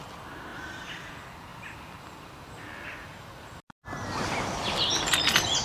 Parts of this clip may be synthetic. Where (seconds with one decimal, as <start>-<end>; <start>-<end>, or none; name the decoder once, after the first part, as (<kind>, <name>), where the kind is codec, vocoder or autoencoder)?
0.5-1.1 (vocoder, BigVGAN v2)